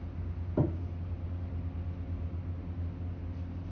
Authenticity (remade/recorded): recorded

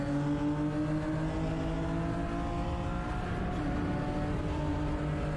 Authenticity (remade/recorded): recorded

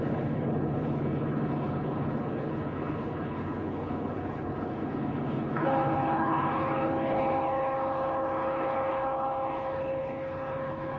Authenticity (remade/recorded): remade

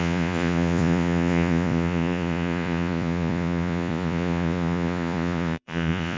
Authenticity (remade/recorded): remade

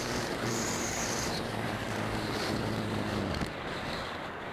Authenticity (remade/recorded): remade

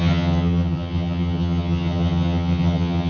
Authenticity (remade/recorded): remade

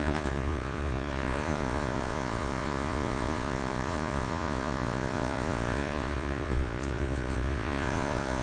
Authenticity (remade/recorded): remade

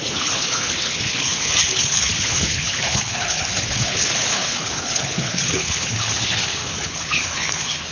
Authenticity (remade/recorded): remade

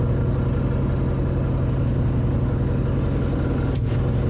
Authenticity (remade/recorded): recorded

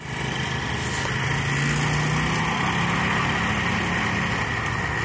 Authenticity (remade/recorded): recorded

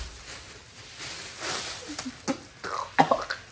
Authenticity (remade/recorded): recorded